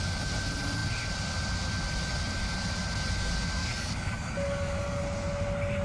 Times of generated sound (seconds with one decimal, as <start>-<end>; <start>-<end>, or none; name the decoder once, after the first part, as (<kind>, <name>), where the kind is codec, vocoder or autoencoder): 3.6-5.0 (codec, DAC)